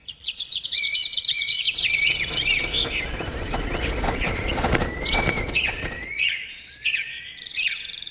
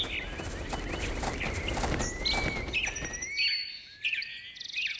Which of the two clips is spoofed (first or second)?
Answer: first